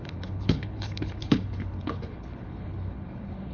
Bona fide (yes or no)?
no